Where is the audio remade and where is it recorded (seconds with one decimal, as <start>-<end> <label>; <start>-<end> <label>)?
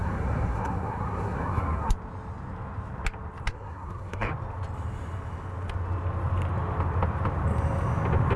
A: 0.0-1.9 remade; 1.9-3.5 recorded; 3.5-4.3 remade; 4.3-8.4 recorded